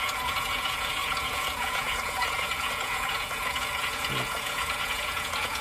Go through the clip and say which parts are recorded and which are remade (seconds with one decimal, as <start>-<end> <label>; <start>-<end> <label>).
0.0-5.6 remade